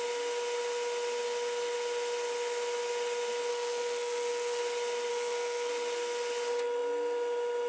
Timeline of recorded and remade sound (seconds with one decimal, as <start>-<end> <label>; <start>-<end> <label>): 0.0-3.5 recorded; 3.5-4.6 remade; 4.6-5.1 recorded; 5.1-5.7 remade; 5.7-7.7 recorded